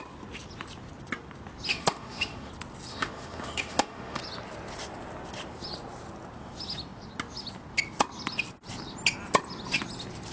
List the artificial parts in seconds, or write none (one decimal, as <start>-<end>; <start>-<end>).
1.7-2.5; 2.9-4.2